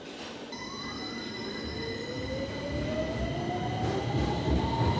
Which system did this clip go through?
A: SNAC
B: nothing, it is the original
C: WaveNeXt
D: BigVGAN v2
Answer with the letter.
B